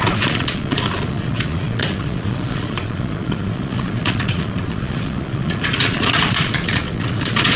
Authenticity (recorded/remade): remade